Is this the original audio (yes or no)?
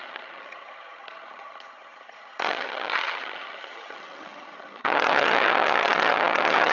no